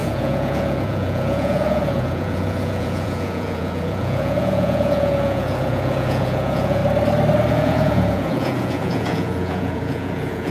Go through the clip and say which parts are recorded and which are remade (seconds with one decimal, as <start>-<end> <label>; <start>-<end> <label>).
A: 0.0-6.8 remade; 6.8-7.5 recorded; 7.5-10.5 remade